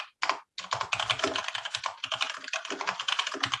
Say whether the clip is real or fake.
real